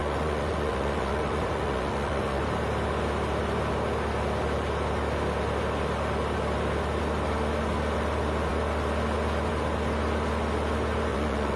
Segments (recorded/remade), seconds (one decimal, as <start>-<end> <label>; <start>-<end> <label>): 0.0-2.4 remade; 2.4-11.1 recorded; 11.1-11.6 remade